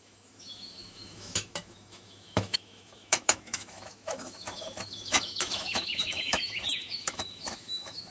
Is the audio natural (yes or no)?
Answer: no